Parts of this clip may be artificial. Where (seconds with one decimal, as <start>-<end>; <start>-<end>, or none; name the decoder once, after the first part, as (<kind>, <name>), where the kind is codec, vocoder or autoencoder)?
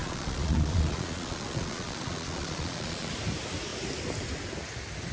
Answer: 0.0-3.1 (vocoder, Vocos)